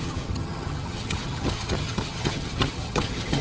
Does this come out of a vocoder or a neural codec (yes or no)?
yes